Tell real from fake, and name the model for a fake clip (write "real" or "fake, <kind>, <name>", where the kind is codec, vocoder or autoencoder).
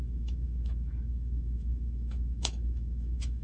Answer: fake, autoencoder, DAC-VAE